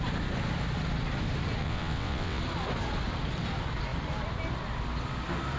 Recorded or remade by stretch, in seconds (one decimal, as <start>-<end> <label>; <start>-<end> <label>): 0.0-1.6 recorded; 1.6-2.4 remade; 2.4-5.6 recorded